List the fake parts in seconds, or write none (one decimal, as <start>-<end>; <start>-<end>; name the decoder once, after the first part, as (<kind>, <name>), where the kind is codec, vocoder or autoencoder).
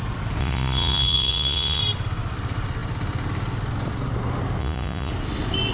0.4-1.8 (vocoder, Vocos); 4.6-5.1